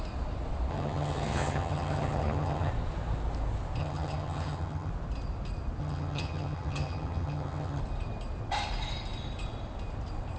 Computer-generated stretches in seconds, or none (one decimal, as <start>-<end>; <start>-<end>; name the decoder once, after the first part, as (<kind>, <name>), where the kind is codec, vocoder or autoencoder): 0.7-2.7 (vocoder, HiFi-GAN); 3.8-4.9; 5.8-7.8